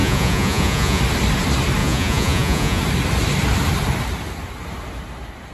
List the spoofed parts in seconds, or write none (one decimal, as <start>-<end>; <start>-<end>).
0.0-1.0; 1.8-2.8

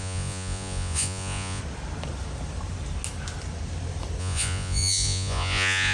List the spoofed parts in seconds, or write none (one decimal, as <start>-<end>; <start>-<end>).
0.0-1.6; 4.2-5.9

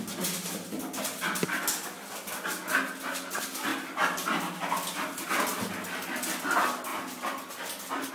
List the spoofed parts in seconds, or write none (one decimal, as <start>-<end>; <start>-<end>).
none

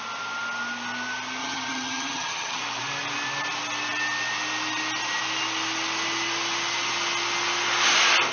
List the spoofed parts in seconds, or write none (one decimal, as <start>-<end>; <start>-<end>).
1.4-2.6

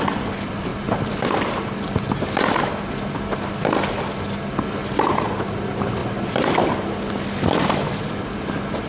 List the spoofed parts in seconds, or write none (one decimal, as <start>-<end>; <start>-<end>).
none

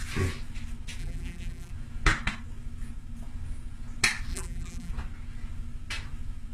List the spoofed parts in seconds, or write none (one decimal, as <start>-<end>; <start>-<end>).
1.0-1.7; 4.3-4.9

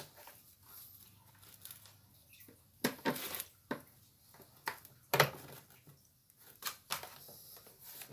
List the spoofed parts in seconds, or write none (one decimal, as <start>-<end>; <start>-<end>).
none

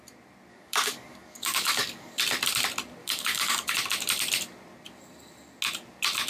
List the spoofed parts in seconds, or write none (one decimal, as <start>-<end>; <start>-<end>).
0.5-2.2; 3.0-3.7